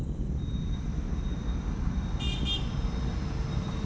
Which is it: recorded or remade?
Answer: recorded